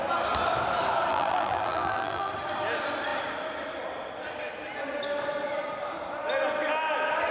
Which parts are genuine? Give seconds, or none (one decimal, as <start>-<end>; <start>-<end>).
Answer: 0.0-1.1; 2.3-7.3